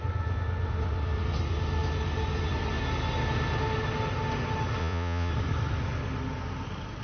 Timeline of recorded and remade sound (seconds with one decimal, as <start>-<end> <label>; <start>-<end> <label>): 0.0-4.8 recorded; 4.8-5.3 remade; 5.3-7.0 recorded